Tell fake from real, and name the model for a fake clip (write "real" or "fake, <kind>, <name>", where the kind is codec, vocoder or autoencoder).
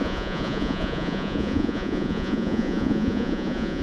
fake, vocoder, Vocos